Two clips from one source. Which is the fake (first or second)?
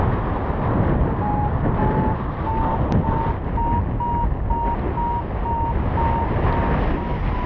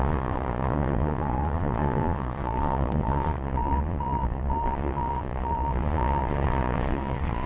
second